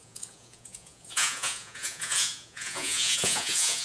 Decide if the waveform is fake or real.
fake